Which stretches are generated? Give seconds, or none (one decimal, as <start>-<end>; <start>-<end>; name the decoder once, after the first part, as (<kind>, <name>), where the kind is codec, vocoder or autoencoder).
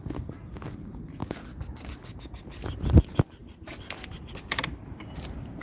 1.2-1.9 (codec, DAC)